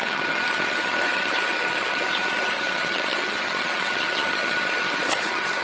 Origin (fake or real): fake